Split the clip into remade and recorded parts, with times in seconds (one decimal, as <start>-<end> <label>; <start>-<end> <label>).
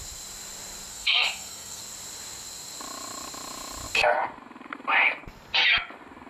0.0-0.9 recorded; 0.9-1.8 remade; 1.8-6.3 recorded